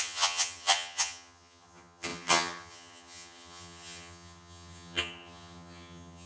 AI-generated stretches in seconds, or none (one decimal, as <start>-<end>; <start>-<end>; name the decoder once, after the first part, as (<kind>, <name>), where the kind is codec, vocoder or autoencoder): 0.0-6.3 (vocoder, HiFi-GAN)